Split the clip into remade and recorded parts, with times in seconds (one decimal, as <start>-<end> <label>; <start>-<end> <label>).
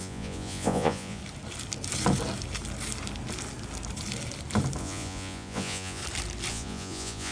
0.0-1.2 remade; 1.2-4.8 recorded; 4.8-6.0 remade; 6.0-6.5 recorded; 6.5-7.3 remade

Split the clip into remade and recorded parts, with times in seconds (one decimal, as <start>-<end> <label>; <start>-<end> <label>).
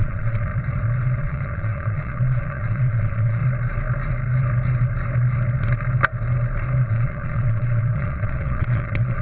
0.0-0.5 remade; 0.5-1.2 recorded; 1.2-3.4 remade; 3.4-6.8 recorded; 6.8-9.2 remade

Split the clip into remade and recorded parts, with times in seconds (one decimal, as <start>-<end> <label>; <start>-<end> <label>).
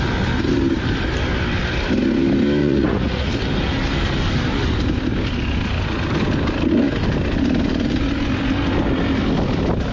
0.0-2.6 recorded; 2.6-3.3 remade; 3.3-9.9 recorded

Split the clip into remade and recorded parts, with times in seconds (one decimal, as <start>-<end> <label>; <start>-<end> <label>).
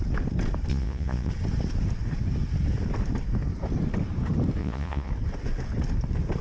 0.0-0.7 recorded; 0.7-1.3 remade; 1.3-4.6 recorded; 4.6-5.1 remade; 5.1-6.4 recorded